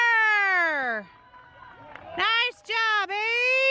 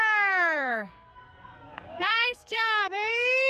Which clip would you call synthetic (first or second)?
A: second